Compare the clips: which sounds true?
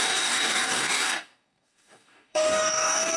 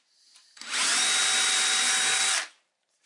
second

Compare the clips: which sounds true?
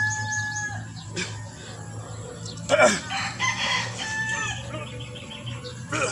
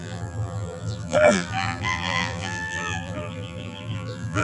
first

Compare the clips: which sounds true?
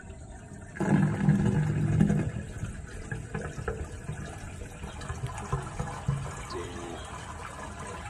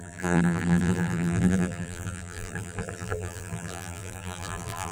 first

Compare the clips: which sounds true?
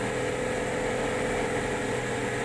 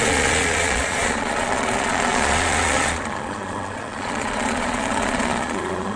first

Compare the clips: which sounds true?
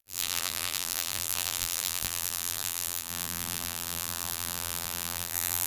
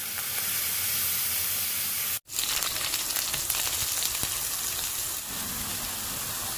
second